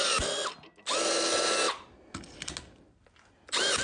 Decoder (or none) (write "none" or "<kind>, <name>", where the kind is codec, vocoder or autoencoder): none